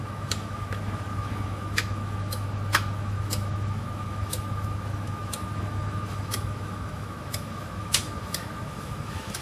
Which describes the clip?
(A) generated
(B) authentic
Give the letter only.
A